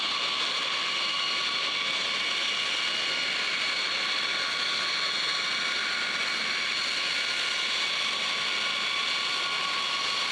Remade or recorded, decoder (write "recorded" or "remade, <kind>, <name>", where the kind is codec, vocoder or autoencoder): recorded